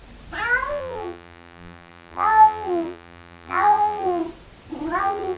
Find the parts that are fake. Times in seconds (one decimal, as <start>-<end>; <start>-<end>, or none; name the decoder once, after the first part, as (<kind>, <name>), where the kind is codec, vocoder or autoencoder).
0.7-4.2 (vocoder, BigVGAN v2); 5.0-5.4